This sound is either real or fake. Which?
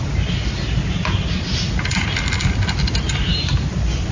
real